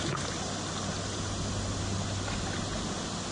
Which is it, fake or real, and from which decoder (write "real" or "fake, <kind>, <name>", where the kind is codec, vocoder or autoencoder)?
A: real